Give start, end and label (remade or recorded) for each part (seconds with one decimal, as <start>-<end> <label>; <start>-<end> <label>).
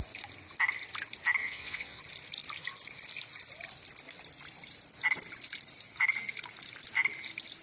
0.0-1.4 recorded; 1.4-2.0 remade; 2.0-7.6 recorded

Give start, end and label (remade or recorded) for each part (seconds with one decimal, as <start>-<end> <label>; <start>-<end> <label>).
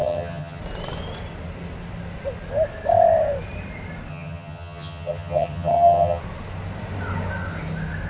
0.0-0.6 remade; 0.6-4.1 recorded; 4.1-6.2 remade; 6.2-8.1 recorded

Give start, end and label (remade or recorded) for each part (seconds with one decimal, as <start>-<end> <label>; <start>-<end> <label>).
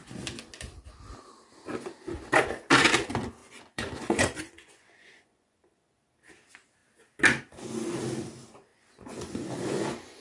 0.0-3.4 recorded; 3.4-6.0 remade; 6.0-8.7 recorded; 8.7-10.2 remade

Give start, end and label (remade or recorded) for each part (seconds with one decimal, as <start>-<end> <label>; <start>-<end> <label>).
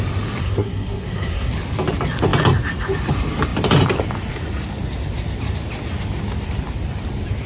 0.0-0.4 recorded; 0.4-1.5 remade; 1.5-7.5 recorded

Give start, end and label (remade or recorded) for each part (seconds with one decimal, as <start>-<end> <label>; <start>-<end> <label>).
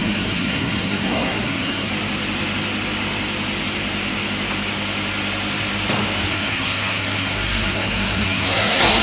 0.0-1.9 remade; 1.9-6.3 recorded; 6.3-9.0 remade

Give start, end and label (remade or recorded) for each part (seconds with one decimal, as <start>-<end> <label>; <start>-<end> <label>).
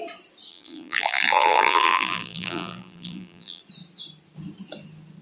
0.0-0.5 recorded; 0.5-3.6 remade; 3.6-5.2 recorded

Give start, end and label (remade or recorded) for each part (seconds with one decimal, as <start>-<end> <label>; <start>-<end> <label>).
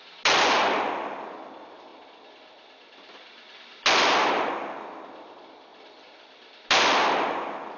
0.0-7.8 recorded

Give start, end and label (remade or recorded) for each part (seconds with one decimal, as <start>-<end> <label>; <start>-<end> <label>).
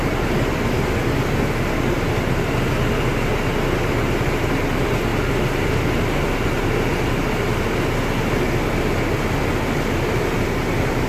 0.0-11.1 recorded